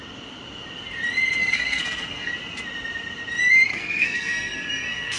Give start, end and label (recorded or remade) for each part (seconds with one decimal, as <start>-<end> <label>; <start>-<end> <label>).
0.0-1.4 recorded; 1.4-2.3 remade; 2.3-3.7 recorded; 3.7-5.2 remade